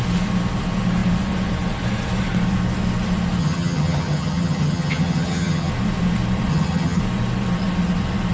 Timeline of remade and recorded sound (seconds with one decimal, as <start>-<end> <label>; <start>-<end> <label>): 0.0-3.4 recorded; 3.4-5.7 remade; 5.7-6.5 recorded; 6.5-7.0 remade; 7.0-8.3 recorded